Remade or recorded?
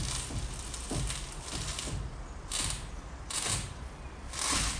recorded